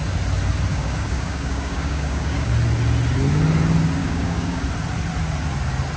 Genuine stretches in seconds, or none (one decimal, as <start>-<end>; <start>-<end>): 0.0-0.7; 2.5-4.0; 4.6-6.0